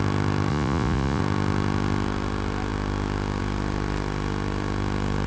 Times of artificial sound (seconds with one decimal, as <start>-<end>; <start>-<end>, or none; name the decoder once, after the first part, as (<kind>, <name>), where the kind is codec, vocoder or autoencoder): 0.5-1.2 (vocoder, Vocos)